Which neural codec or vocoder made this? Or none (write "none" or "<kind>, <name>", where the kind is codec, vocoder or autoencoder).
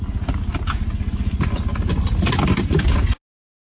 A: none